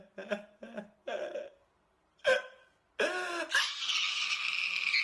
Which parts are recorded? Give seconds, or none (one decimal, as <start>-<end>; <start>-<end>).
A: 0.0-5.0